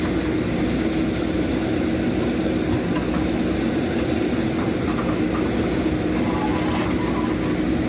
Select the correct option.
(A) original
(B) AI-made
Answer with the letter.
A